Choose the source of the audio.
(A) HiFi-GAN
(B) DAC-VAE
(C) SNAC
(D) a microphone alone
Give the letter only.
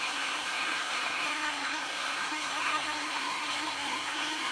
C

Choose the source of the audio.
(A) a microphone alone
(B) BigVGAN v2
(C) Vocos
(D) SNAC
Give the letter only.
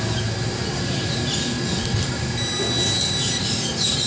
A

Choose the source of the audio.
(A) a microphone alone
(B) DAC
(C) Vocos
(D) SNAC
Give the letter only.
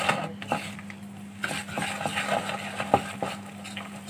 A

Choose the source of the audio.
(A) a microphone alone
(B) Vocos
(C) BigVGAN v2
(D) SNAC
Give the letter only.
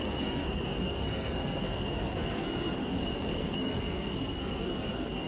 D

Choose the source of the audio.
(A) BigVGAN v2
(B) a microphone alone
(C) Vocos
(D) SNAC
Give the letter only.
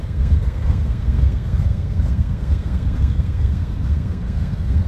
D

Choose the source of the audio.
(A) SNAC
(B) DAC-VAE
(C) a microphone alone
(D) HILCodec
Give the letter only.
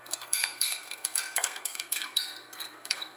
A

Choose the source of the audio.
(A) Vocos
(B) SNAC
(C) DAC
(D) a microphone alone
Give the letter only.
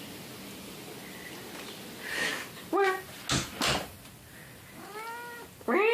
D